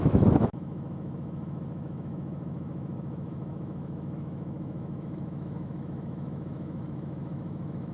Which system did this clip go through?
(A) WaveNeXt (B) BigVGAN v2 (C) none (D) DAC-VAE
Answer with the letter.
D